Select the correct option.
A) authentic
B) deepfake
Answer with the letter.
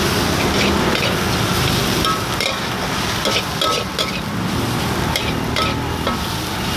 A